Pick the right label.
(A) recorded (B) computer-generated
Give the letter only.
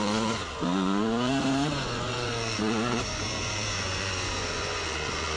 B